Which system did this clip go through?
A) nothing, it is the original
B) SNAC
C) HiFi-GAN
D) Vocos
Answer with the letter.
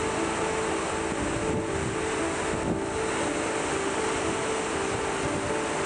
A